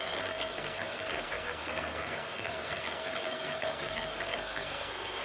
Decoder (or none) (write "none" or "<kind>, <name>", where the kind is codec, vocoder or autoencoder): codec, SNAC